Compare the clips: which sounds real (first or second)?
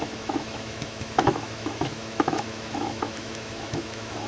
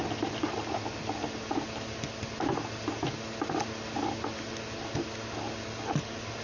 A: second